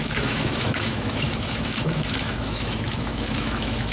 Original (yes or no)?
no